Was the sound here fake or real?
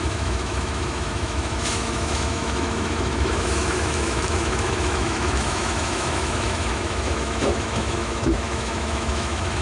fake